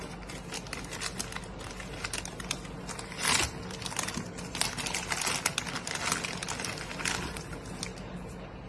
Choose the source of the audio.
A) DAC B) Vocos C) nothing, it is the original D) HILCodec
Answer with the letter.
C